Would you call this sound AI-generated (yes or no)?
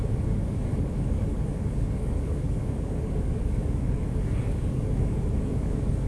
yes